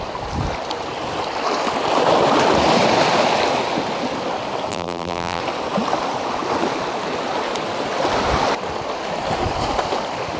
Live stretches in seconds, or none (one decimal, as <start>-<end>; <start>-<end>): 0.0-4.7; 5.4-10.4